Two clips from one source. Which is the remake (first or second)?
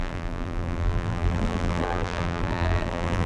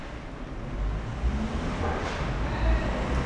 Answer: first